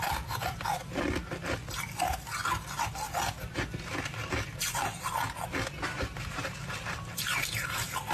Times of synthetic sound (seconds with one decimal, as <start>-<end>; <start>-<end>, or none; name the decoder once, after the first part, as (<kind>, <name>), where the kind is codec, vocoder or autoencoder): none